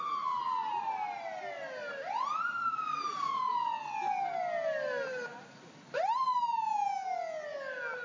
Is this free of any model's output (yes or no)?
yes